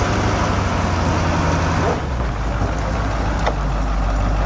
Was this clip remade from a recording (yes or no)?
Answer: no